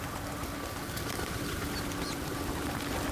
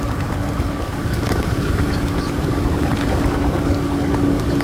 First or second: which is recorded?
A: first